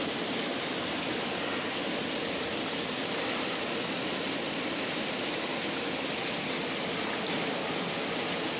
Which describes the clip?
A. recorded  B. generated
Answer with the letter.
A